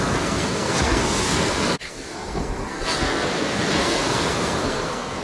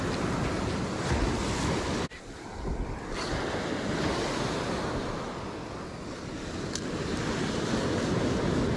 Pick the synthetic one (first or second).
first